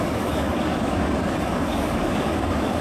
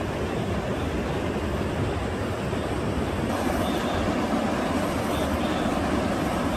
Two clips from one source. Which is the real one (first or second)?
second